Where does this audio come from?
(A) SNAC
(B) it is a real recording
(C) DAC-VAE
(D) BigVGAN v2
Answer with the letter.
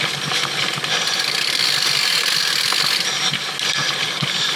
B